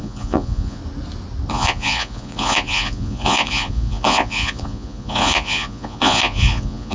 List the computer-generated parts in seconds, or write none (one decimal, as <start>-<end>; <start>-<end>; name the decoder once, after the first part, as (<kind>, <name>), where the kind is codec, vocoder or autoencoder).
0.0-0.8 (vocoder, Vocos); 1.5-6.9